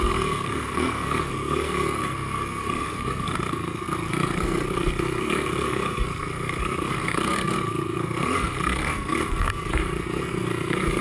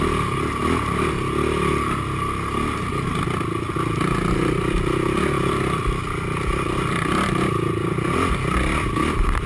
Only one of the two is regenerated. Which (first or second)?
first